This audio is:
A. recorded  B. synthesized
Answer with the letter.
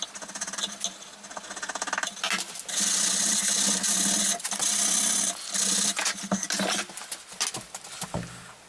A